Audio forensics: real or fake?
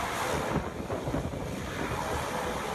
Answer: real